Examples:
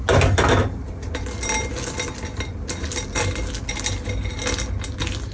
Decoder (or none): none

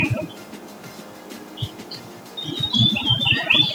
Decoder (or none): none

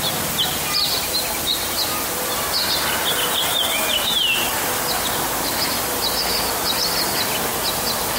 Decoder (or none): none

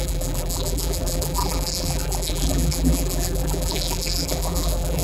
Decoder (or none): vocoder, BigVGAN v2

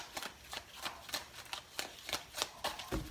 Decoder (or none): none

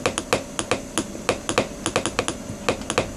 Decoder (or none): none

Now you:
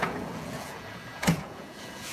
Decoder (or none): vocoder, Vocos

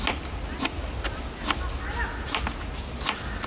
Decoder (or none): none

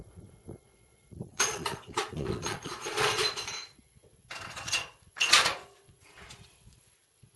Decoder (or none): vocoder, Vocos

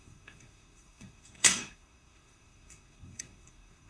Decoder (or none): codec, SNAC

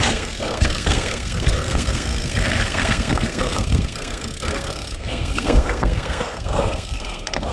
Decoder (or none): codec, SNAC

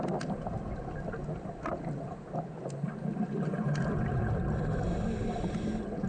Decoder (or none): none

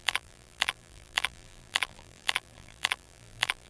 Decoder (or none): vocoder, BigVGAN v2